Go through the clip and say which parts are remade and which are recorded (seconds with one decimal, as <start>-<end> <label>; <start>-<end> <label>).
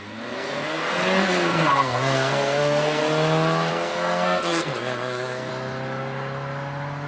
0.0-3.0 remade; 3.0-3.7 recorded; 3.7-5.5 remade; 5.5-7.1 recorded